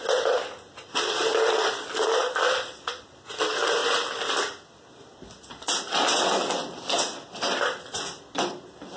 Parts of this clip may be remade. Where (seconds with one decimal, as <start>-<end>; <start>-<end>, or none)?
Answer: none